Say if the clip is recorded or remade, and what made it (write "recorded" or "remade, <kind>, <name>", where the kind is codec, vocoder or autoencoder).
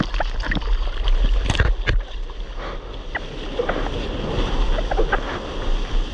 recorded